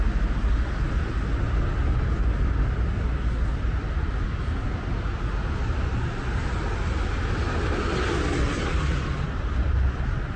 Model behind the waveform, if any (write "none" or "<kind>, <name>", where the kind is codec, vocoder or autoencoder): none